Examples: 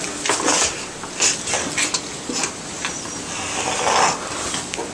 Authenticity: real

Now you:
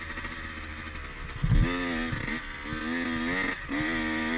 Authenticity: real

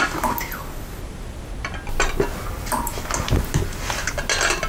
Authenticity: real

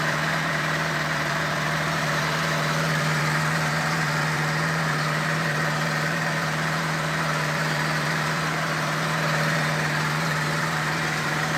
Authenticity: fake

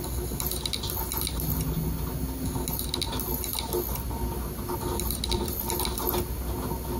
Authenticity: real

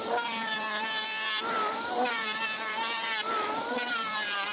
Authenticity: fake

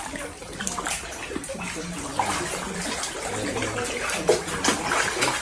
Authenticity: real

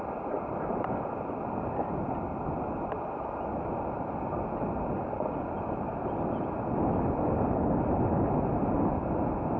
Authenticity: real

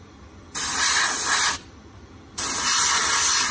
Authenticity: fake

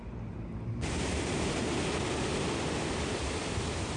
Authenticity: real